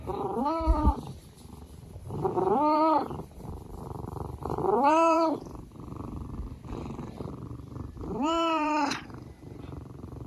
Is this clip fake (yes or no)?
yes